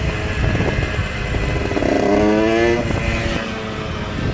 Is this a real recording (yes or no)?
yes